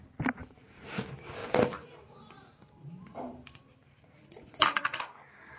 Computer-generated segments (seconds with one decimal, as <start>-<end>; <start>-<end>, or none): 0.4-0.9; 1.4-4.8